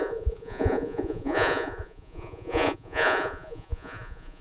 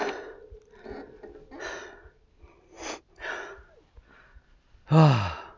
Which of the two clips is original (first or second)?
second